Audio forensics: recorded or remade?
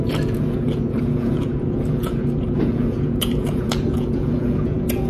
remade